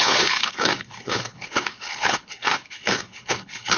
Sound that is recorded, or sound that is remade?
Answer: remade